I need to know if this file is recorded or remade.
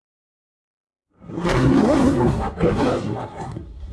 remade